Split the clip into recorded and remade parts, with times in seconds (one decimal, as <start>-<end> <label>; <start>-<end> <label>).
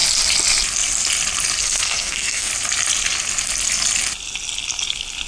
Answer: 0.0-1.6 recorded; 1.6-2.5 remade; 2.5-5.3 recorded